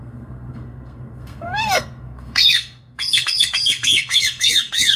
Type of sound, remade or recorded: remade